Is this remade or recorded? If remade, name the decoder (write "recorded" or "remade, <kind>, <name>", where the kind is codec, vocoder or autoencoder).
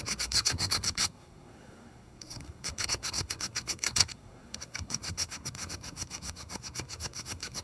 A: remade, codec, SNAC